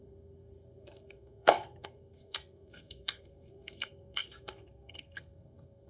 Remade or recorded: remade